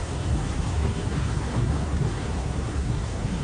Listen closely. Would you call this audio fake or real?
fake